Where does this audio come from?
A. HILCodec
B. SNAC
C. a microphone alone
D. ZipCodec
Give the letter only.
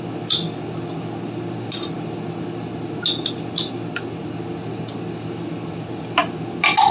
C